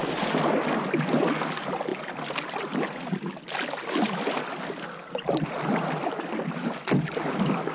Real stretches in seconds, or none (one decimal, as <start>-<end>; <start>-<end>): 0.0-7.7